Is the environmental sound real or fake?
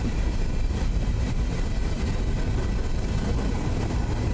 real